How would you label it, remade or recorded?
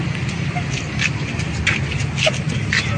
recorded